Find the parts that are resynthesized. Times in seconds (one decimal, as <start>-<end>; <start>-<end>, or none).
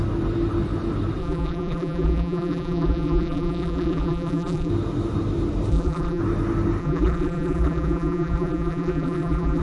1.2-4.7; 5.7-6.2; 6.8-9.6